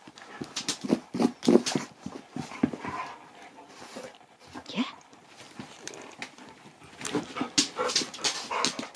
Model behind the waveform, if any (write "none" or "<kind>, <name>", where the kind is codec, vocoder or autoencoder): none